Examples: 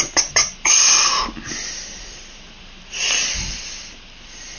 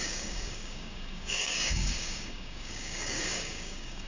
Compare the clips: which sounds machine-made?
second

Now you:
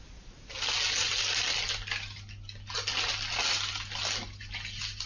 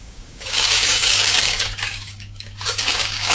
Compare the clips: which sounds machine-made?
second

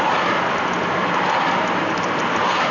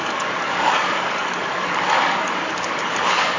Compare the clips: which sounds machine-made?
second